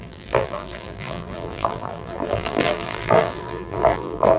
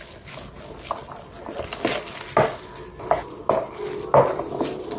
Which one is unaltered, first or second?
second